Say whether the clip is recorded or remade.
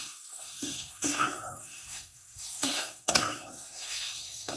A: remade